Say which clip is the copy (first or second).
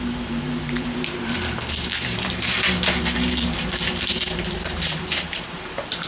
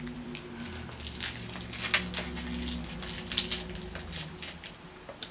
first